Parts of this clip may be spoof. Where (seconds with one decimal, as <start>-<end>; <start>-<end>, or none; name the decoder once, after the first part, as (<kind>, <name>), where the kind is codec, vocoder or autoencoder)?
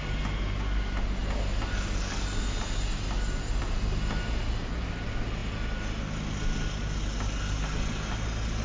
none